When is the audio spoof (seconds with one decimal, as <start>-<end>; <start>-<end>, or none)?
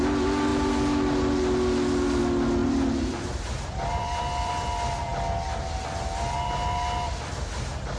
2.6-4.5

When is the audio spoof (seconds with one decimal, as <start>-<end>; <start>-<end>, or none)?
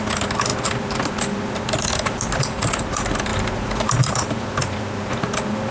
none